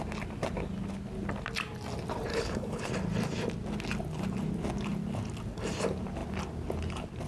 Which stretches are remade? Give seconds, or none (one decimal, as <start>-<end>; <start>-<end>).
2.3-2.9